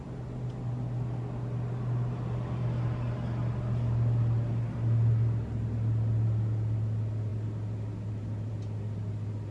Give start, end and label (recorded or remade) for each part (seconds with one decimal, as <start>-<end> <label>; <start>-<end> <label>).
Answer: 0.0-9.5 recorded